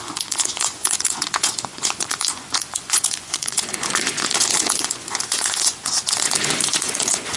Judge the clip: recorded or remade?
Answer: remade